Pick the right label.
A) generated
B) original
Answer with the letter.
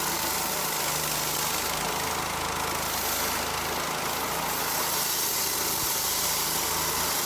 B